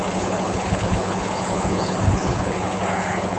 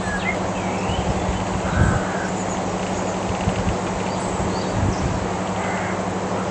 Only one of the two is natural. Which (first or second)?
second